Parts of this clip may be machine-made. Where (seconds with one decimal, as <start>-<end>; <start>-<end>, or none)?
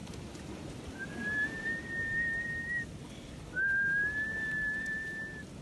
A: none